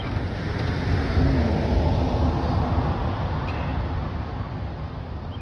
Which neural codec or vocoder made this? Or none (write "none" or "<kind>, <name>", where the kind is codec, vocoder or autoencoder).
none